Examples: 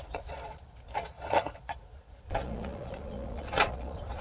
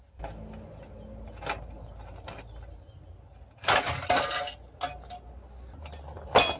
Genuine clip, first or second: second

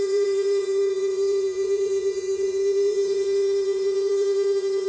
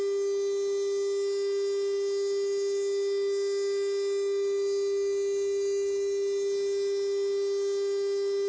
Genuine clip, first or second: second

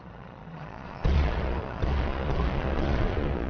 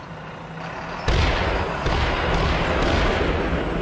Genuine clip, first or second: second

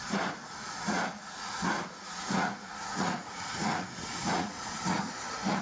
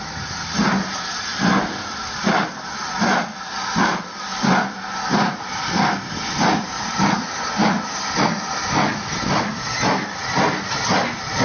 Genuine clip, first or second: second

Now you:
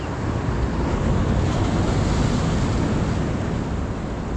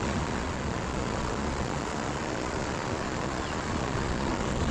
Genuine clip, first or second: first